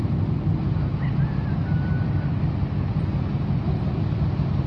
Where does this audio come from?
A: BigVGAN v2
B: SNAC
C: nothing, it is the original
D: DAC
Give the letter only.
C